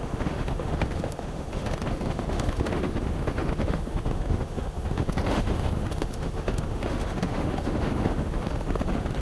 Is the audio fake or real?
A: fake